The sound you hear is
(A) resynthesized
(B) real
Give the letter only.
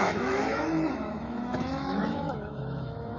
A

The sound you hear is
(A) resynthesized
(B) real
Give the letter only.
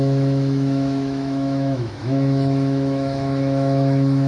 A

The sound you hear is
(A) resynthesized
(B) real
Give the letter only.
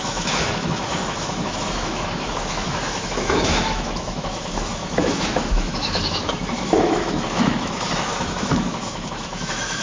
A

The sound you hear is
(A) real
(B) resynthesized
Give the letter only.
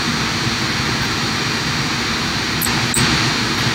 A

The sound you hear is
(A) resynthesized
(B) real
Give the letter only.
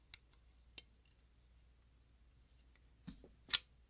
B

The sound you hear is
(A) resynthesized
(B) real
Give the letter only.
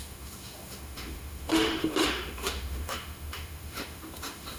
A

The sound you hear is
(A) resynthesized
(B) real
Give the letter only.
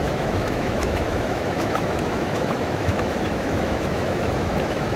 A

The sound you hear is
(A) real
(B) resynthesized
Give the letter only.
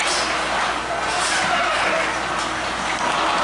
A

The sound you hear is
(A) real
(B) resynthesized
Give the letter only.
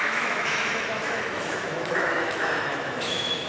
B